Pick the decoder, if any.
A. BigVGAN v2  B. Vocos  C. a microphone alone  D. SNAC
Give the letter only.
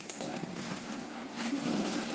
D